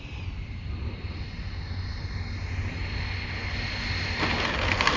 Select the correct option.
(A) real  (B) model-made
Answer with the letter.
A